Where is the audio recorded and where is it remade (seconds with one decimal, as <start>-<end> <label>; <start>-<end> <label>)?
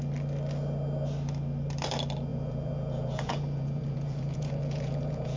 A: 0.0-2.3 recorded; 2.3-5.4 remade